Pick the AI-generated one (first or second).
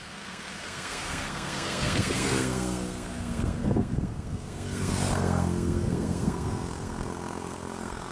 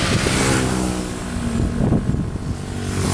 first